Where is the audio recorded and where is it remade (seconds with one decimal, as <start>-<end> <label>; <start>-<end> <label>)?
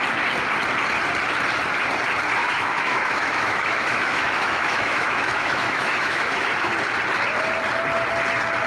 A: 0.0-2.4 recorded; 2.4-6.7 remade; 6.7-8.7 recorded